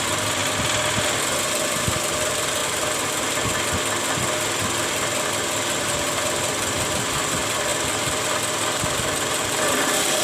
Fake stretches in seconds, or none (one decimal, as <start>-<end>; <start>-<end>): 0.0-0.4; 1.8-10.2